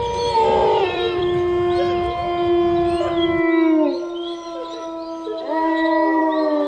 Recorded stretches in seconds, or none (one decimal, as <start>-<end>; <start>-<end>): 0.0-0.6; 1.2-6.7